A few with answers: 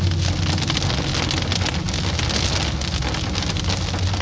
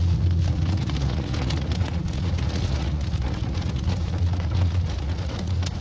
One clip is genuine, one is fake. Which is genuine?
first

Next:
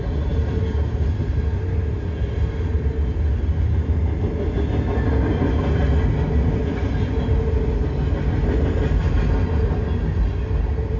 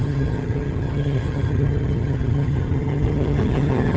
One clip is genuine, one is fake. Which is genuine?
first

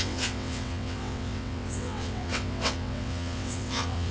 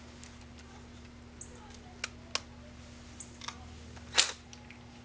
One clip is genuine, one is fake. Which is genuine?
second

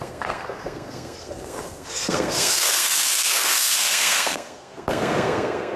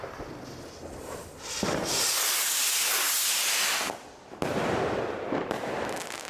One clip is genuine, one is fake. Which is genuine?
second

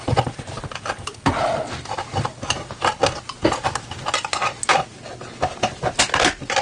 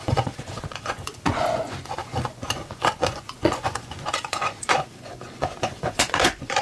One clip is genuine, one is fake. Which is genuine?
first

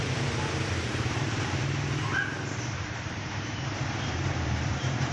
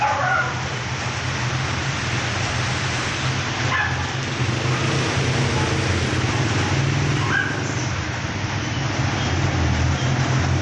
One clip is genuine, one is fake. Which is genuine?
second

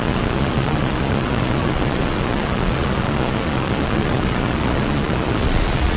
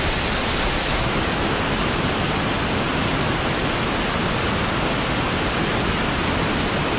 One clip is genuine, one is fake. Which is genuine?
second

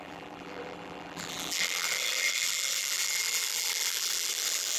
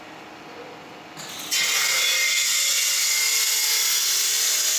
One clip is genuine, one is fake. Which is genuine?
second